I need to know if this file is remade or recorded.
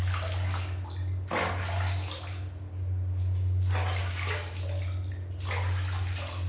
recorded